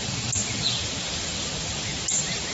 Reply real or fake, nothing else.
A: fake